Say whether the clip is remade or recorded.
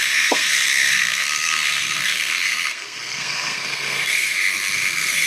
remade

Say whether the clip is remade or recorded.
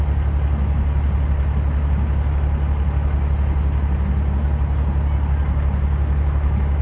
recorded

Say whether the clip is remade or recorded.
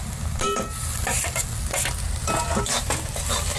recorded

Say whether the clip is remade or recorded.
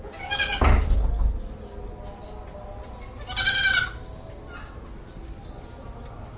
recorded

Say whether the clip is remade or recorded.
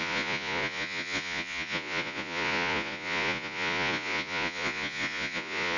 remade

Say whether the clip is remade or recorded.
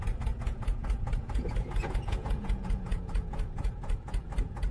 remade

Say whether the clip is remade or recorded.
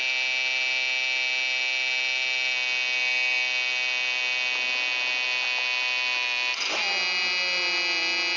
recorded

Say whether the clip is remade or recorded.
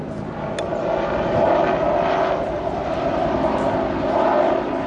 recorded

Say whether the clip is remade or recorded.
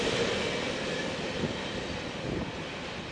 recorded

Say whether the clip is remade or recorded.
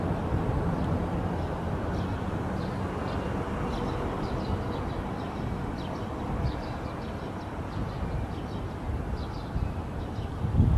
recorded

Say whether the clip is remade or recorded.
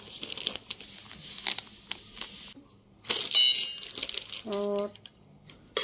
recorded